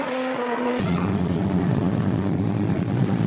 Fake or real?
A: fake